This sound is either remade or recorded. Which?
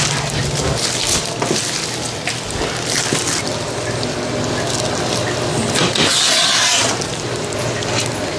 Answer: recorded